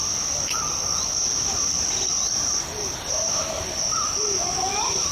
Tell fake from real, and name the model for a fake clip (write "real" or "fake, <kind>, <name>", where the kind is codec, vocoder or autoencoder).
real